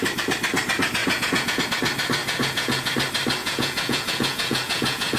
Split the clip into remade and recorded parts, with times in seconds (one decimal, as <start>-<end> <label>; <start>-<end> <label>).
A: 0.0-1.0 recorded; 1.0-1.6 remade; 1.6-2.2 recorded; 2.2-2.9 remade; 2.9-3.4 recorded; 3.4-5.2 remade